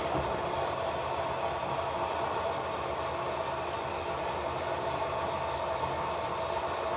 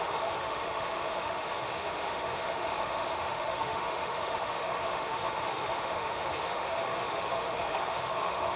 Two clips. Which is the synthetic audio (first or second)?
second